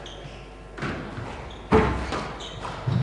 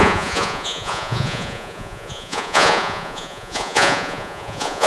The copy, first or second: second